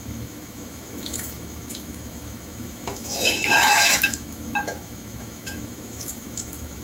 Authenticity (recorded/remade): remade